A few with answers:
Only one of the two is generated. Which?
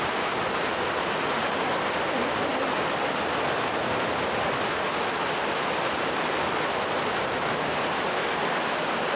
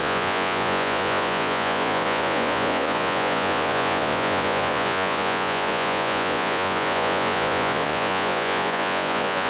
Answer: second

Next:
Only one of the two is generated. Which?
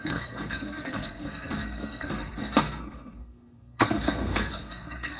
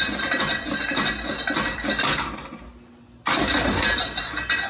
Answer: first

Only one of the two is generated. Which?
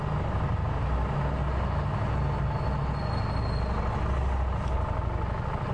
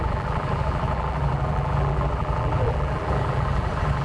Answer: second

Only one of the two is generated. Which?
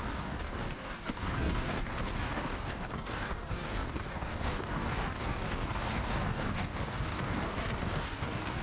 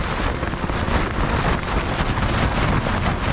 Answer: first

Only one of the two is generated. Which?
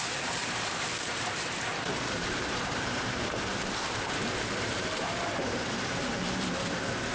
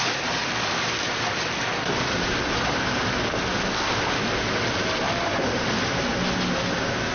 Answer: first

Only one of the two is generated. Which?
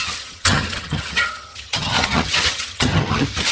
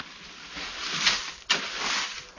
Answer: first